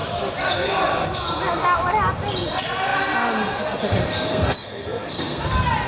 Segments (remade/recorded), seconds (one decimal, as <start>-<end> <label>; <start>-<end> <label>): 0.0-4.1 recorded; 4.1-5.4 remade; 5.4-5.9 recorded